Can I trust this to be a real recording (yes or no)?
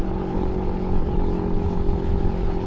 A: no